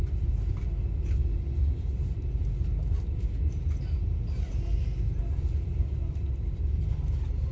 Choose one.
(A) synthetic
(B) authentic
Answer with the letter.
B